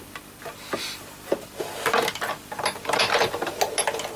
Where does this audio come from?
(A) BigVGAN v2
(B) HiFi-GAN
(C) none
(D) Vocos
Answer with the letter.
C